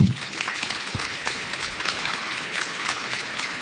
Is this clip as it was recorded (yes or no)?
no